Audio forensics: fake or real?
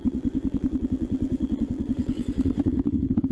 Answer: fake